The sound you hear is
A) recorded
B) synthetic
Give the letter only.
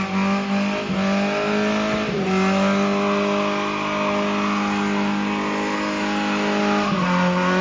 A